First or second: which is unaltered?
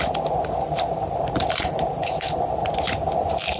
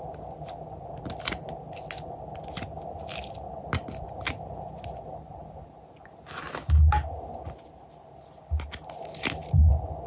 second